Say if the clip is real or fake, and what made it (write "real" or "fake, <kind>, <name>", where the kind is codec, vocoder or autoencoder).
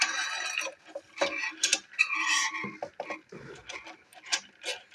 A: real